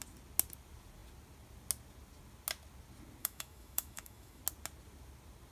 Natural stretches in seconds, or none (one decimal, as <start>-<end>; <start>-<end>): 0.0-3.2; 4.4-5.5